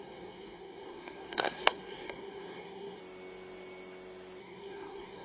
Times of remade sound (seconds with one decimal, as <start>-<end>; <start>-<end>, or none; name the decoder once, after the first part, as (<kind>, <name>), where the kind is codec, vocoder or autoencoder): 0.0-3.0 (codec, SNAC); 4.4-5.2